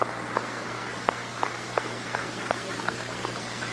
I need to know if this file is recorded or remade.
remade